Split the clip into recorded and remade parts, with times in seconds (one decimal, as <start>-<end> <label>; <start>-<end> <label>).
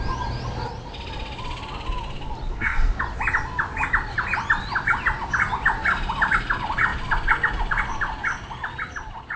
0.0-2.5 recorded; 2.5-3.0 remade; 3.0-9.4 recorded